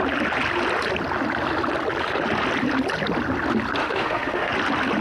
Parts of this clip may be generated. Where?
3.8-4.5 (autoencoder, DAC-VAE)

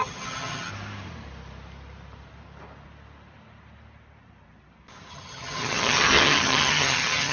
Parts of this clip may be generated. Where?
0.0-0.7 (vocoder, HiFi-GAN); 5.1-7.3